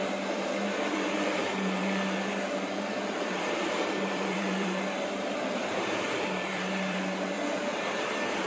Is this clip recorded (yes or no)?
no